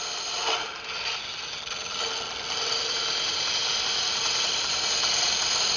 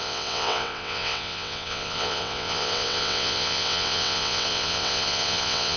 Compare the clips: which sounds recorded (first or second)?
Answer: first